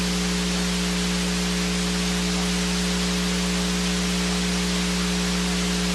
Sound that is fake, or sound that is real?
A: real